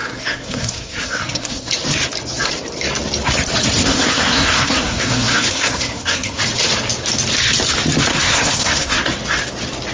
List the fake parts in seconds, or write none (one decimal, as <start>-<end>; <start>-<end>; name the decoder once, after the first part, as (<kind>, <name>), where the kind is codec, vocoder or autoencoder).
0.0-1.7 (codec, SNAC); 3.8-6.4; 8.1-9.0